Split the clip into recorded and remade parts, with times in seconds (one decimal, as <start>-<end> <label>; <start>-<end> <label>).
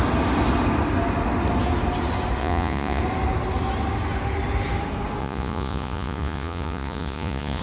0.0-2.4 recorded; 2.4-3.0 remade; 3.0-5.2 recorded; 5.2-7.6 remade